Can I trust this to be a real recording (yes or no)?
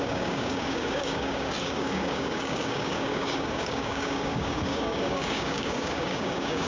no